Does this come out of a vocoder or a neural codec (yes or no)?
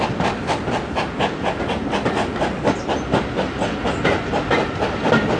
no